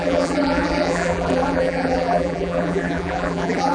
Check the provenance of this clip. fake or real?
fake